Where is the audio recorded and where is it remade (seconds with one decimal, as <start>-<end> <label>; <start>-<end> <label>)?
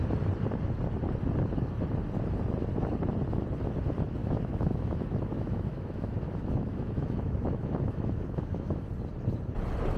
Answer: 0.0-4.2 recorded; 4.2-8.9 remade; 8.9-10.0 recorded